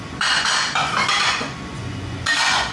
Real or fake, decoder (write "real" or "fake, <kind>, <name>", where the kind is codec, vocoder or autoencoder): fake, vocoder, Vocos